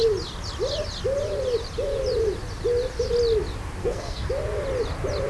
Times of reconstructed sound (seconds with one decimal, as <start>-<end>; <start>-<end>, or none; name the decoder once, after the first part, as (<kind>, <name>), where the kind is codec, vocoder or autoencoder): 3.8-4.3 (codec, SNAC)